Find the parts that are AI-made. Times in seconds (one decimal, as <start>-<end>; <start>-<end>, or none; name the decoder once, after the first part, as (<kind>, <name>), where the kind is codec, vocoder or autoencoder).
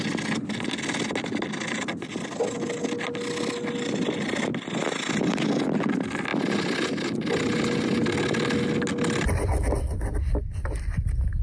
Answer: none